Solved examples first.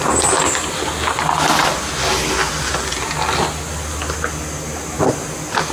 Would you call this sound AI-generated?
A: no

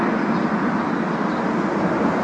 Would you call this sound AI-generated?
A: no